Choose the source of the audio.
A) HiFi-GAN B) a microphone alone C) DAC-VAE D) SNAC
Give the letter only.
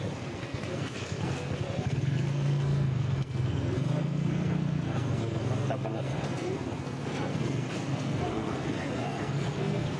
D